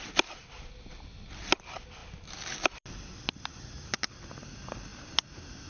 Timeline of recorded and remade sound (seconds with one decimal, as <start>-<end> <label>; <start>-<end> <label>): 0.0-5.7 recorded